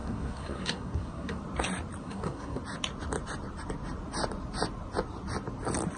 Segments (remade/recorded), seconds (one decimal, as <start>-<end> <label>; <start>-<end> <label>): 0.0-1.4 remade; 1.4-2.0 recorded; 2.0-2.6 remade; 2.6-6.0 recorded